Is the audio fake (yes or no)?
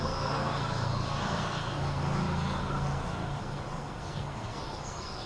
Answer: yes